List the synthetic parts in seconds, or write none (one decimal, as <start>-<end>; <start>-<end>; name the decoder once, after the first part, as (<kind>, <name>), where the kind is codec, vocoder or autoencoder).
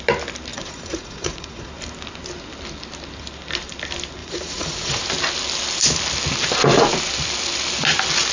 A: 0.5-1.7 (vocoder, Vocos); 4.2-5.0